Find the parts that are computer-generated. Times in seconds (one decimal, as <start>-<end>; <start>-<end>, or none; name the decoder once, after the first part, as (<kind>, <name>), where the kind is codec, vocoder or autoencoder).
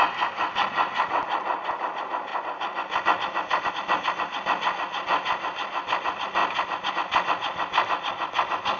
none